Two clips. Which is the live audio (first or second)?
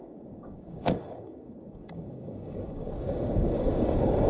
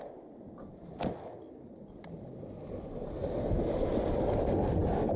second